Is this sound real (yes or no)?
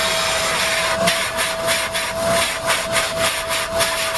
yes